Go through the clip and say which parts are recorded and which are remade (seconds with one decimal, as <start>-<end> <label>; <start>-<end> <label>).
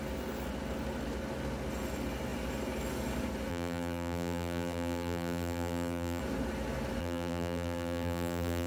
0.0-3.5 recorded; 3.5-6.2 remade; 6.2-7.0 recorded; 7.0-8.7 remade